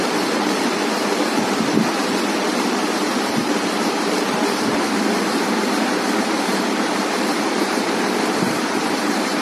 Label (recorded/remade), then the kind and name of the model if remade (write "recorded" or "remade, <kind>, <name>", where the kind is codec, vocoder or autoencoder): remade, vocoder, BigVGAN v2